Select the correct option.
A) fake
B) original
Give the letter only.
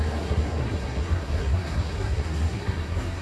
A